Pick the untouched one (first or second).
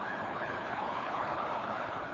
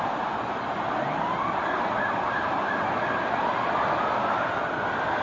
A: second